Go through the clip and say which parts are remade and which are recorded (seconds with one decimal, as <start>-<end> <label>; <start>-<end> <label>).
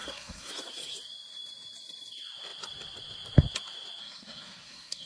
0.0-0.5 remade; 0.5-4.0 recorded; 4.0-5.1 remade